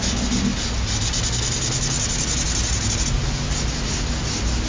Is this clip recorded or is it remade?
recorded